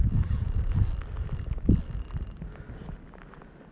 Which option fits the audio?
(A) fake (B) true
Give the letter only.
B